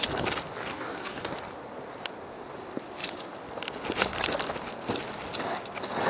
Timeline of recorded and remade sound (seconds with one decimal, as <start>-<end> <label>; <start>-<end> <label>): 0.0-0.7 recorded; 0.7-1.3 remade; 1.3-6.1 recorded